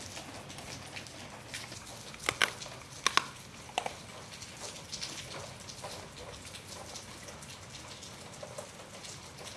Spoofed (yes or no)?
no